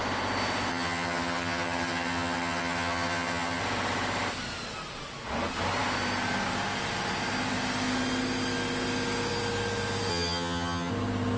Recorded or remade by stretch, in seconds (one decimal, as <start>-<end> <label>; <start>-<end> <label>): 0.0-0.7 recorded; 0.7-3.6 remade; 3.6-10.1 recorded; 10.1-10.9 remade; 10.9-11.4 recorded